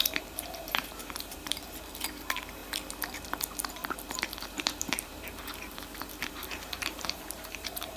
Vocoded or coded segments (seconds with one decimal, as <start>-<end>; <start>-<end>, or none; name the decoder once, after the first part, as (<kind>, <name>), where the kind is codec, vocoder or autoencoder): 0.0-2.6 (vocoder, BigVGAN v2); 3.7-8.0

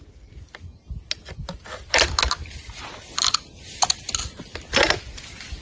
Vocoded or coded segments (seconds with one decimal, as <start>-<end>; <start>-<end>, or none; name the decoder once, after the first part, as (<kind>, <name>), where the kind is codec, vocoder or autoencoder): 1.4-2.1 (vocoder, BigVGAN v2)

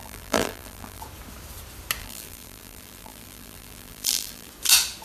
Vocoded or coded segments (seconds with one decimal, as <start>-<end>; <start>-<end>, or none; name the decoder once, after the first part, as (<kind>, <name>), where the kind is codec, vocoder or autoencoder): 0.0-1.0 (vocoder, BigVGAN v2); 2.0-4.5

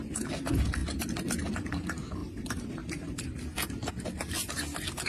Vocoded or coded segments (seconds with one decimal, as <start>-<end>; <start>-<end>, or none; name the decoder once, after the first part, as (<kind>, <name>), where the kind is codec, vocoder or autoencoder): 0.8-1.5 (vocoder, BigVGAN v2); 2.2-3.9

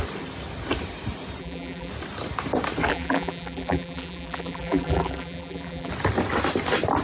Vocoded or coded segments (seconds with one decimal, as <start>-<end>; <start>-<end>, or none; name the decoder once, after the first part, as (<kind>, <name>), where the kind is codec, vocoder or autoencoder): 1.4-1.9 (vocoder, BigVGAN v2); 2.9-5.9

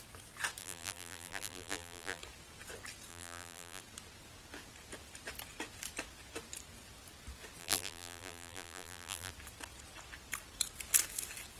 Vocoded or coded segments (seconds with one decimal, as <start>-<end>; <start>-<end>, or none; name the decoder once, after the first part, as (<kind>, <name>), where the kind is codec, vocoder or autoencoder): 0.6-2.2 (vocoder, BigVGAN v2); 3.1-3.8; 7.6-9.3

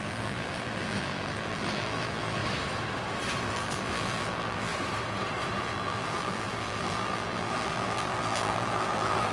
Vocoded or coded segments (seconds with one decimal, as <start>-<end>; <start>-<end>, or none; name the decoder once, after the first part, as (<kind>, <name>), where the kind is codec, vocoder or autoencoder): 0.0-2.4 (vocoder, BigVGAN v2); 3.4-4.7; 5.6-9.3

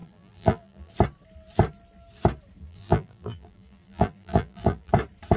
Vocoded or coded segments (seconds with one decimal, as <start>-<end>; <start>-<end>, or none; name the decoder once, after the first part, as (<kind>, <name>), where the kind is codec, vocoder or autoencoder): 0.0-0.9 (vocoder, BigVGAN v2); 2.6-4.9